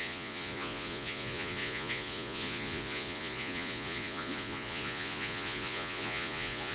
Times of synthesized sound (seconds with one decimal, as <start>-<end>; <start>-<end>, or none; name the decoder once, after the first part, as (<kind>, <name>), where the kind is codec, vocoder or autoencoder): 0.0-6.7 (vocoder, Vocos)